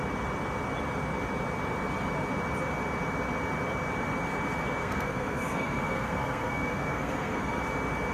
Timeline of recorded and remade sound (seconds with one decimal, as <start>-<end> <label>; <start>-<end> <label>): 0.0-4.8 recorded; 4.8-7.6 remade; 7.6-8.1 recorded